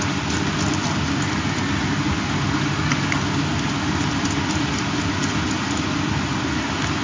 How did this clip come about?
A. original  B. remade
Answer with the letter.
A